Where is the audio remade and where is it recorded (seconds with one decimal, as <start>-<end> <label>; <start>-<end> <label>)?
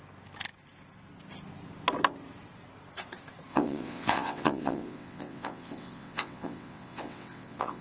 0.0-3.5 recorded; 3.5-7.8 remade